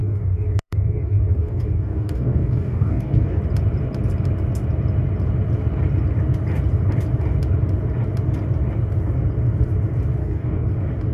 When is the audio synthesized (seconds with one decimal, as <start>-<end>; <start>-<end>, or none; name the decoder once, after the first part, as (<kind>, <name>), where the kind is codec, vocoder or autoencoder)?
0.0-3.4 (codec, DAC); 10.2-10.7